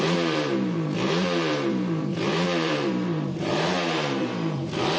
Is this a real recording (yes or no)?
no